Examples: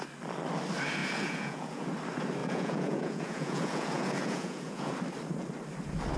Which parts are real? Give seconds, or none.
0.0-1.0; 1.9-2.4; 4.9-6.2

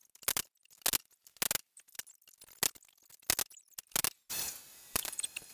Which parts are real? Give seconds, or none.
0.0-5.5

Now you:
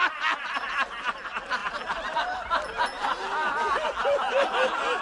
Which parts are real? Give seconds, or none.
0.0-5.0

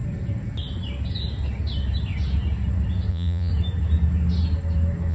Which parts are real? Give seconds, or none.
0.0-3.1; 3.5-5.1

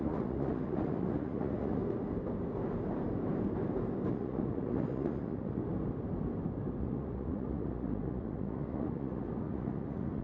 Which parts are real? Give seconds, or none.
1.8-4.1; 5.6-6.8

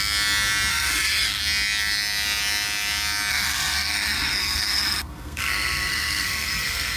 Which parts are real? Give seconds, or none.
0.0-0.7; 1.4-3.3

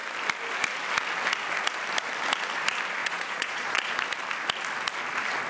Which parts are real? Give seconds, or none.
0.0-3.0; 3.9-5.5

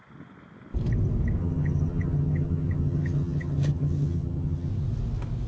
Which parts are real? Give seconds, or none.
0.0-1.4; 4.7-5.5